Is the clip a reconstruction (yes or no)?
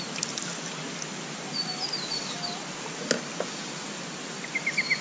no